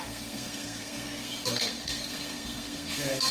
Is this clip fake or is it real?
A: fake